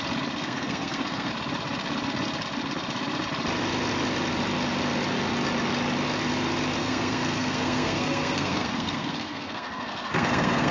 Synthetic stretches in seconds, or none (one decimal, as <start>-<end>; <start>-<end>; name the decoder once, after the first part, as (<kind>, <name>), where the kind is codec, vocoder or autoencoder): 0.4-1.3 (codec, SNAC); 6.8-10.7